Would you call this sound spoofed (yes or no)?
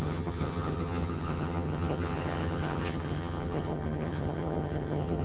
yes